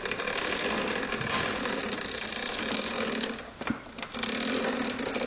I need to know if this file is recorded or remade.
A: recorded